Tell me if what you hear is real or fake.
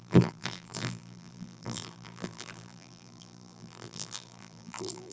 fake